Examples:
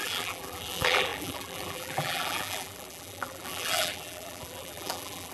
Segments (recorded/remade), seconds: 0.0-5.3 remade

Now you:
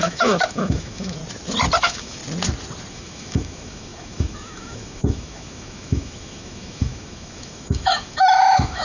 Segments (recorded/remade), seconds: 0.0-1.2 remade; 1.2-1.8 recorded; 1.8-2.2 remade; 2.2-2.9 recorded; 2.9-8.8 remade

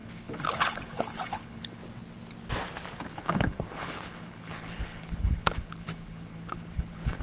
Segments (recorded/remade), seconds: 0.0-1.8 remade; 1.8-3.1 recorded; 3.1-7.2 remade

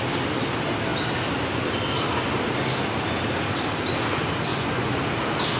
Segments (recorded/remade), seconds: 0.0-4.5 recorded; 4.5-5.0 remade; 5.0-5.6 recorded